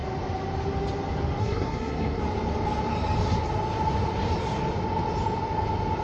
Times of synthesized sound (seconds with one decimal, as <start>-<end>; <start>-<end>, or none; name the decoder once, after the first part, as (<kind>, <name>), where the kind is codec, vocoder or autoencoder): 1.4-2.2 (codec, SNAC)